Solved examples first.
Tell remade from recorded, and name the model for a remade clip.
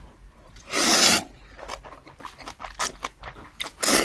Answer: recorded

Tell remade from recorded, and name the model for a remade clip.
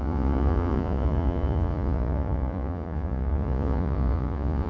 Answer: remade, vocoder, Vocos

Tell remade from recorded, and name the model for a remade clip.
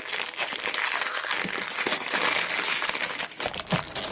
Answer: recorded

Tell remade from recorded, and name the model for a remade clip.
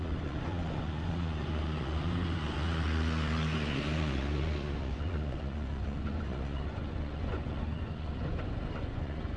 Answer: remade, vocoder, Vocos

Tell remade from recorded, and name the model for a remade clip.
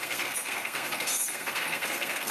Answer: remade, codec, SNAC